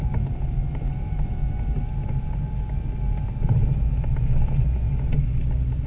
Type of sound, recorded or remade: recorded